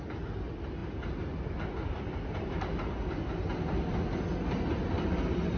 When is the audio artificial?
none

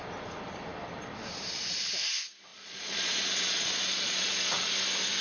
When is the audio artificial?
2.5-4.7 (vocoder, Vocos)

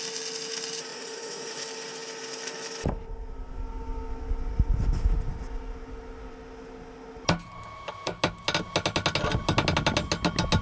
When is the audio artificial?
0.9-1.5 (vocoder, Vocos)

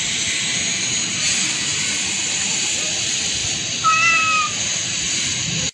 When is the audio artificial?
none

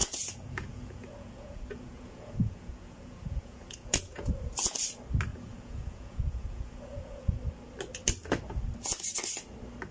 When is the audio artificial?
0.0-4.4 (vocoder, Vocos); 5.3-7.4

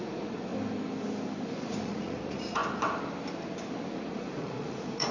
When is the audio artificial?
0.0-0.5 (vocoder, Vocos); 1.7-2.6; 3.9-5.1

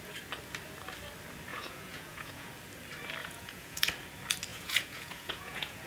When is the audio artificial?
1.5-2.5 (vocoder, Vocos); 3.2-3.9; 4.5-5.9

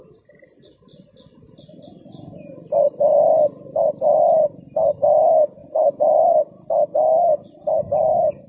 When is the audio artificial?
5.6-6.7 (vocoder, Vocos)